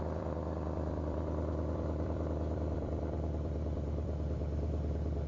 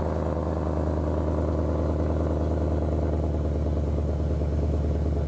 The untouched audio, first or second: second